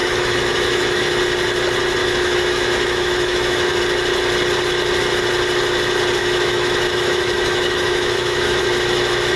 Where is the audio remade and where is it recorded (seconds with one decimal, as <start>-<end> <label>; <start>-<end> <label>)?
0.0-1.2 remade; 1.2-2.0 recorded; 2.0-3.8 remade; 3.8-6.2 recorded; 6.2-8.6 remade; 8.6-9.4 recorded